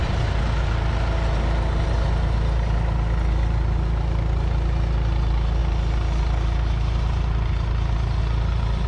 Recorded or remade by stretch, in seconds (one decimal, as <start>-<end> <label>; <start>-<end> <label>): 0.0-8.9 recorded

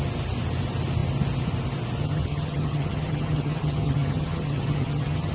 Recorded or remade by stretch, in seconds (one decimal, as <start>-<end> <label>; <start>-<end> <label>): 0.0-2.0 recorded; 2.0-5.3 remade

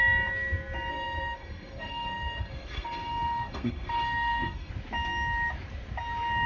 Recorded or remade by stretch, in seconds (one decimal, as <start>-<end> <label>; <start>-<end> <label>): 0.0-0.9 recorded; 0.9-4.7 remade; 4.7-6.5 recorded

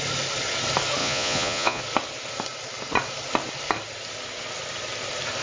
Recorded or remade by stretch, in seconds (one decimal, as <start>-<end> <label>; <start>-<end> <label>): 0.0-1.0 recorded; 1.0-1.8 remade; 1.8-5.4 recorded